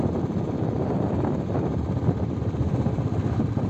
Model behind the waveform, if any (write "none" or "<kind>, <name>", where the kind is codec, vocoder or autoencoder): none